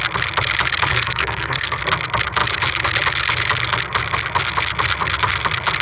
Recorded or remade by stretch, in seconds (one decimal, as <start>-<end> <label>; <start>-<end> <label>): 0.0-0.9 recorded; 0.9-1.8 remade; 1.8-5.8 recorded